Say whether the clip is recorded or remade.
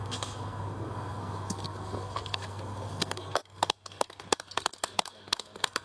remade